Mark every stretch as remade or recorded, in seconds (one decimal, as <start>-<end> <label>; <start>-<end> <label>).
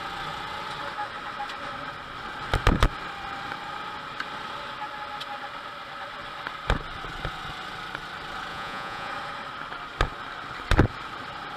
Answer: 0.0-8.5 recorded; 8.5-9.1 remade; 9.1-11.6 recorded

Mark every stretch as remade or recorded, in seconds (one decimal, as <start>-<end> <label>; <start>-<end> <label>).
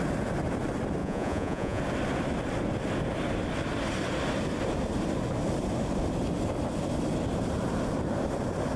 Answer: 0.0-1.0 recorded; 1.0-1.8 remade; 1.8-8.8 recorded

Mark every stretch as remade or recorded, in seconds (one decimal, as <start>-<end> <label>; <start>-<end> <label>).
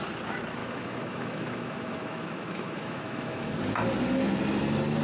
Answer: 0.0-0.6 recorded; 0.6-3.6 remade; 3.6-5.0 recorded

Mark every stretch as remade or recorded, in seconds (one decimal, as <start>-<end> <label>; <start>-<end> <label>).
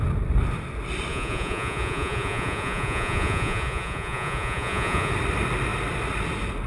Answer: 0.0-1.1 recorded; 1.1-5.1 remade; 5.1-6.7 recorded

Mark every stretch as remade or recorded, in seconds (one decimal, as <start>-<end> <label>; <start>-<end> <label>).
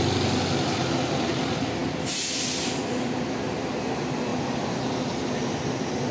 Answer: 0.0-6.1 recorded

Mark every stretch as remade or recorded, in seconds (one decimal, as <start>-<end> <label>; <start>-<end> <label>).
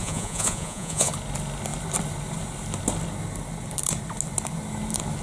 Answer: 0.0-1.1 remade; 1.1-5.2 recorded